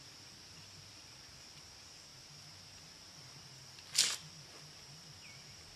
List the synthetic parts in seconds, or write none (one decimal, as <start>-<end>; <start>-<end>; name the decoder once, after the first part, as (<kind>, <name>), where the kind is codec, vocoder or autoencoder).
none